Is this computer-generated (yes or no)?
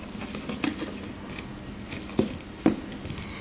no